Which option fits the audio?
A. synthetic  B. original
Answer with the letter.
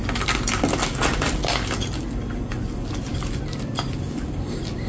B